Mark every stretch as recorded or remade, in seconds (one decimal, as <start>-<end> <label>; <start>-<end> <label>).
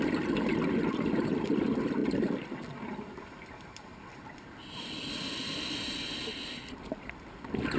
0.0-7.8 recorded